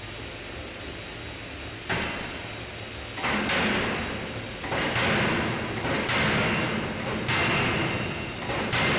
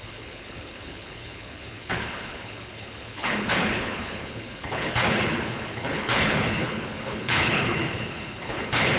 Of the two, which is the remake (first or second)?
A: second